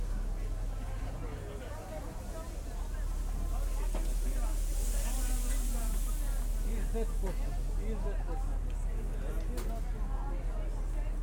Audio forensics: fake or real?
real